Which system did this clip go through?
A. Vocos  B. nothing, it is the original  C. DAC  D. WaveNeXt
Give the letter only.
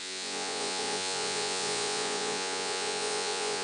A